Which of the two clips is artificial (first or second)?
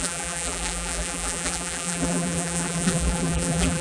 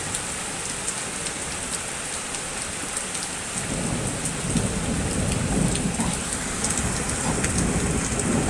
first